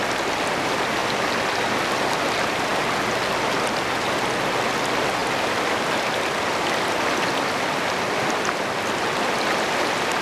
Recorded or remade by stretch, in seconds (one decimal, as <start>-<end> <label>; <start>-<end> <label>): 0.0-10.2 recorded